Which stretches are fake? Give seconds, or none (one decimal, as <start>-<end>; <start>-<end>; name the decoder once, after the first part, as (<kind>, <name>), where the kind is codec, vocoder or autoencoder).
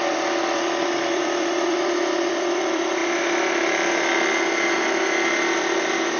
0.0-3.0 (vocoder, BigVGAN v2); 5.6-6.2